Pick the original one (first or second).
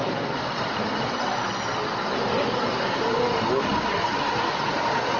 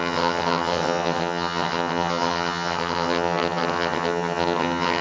first